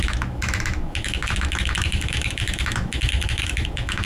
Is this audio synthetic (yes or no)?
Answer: yes